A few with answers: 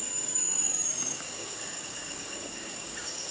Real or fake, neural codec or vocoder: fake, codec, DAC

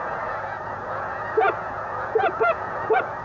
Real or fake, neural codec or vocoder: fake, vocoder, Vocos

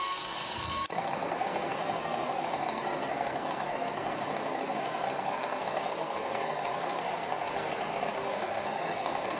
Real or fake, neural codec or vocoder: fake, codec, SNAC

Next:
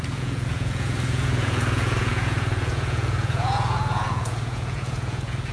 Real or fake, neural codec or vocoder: fake, vocoder, Vocos